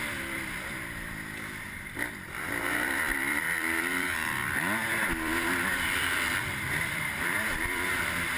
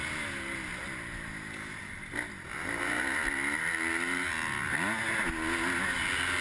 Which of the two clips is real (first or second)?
second